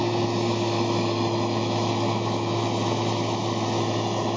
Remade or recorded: remade